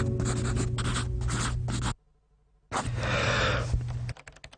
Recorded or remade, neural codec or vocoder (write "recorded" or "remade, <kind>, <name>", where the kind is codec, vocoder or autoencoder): recorded